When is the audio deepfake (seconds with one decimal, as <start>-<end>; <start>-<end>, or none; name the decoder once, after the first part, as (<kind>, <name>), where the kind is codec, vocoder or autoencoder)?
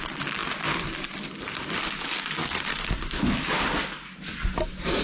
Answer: none